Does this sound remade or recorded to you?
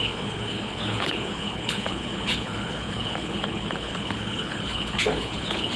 remade